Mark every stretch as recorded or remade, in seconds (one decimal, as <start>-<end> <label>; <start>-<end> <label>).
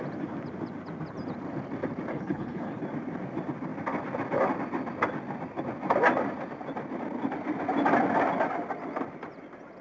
0.0-2.1 recorded; 2.1-2.8 remade; 2.8-9.8 recorded